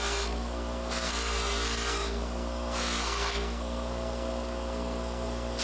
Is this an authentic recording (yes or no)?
no